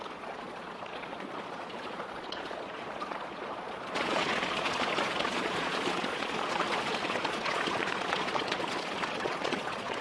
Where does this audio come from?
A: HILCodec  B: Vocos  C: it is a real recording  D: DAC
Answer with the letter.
B